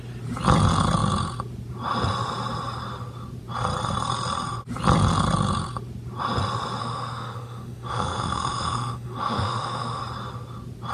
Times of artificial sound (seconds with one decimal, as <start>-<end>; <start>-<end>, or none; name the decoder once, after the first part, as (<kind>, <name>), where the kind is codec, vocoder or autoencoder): 6.8-10.0 (autoencoder, DAC-VAE)